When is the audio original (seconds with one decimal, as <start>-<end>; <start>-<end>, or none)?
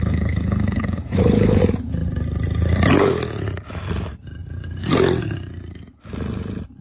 1.6-6.8